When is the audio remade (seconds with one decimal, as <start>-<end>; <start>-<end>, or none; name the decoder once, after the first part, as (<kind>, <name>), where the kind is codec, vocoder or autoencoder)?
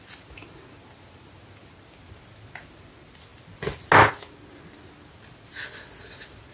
none